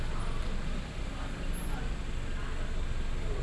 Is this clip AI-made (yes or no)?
no